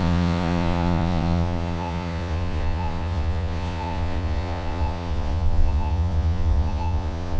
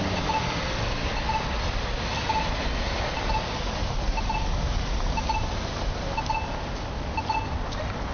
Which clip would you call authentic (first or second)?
second